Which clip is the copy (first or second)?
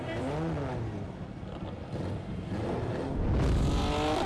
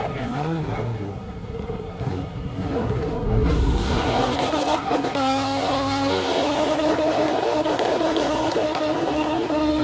second